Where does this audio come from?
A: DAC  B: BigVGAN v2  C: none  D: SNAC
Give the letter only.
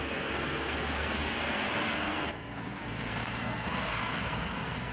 D